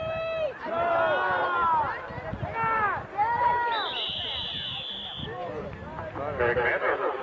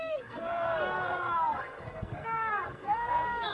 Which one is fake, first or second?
second